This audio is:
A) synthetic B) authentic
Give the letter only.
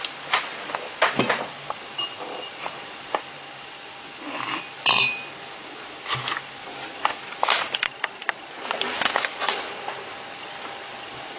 B